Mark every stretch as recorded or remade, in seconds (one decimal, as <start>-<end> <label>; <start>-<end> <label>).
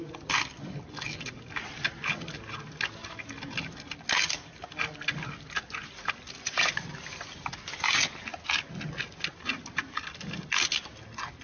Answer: 0.0-11.4 recorded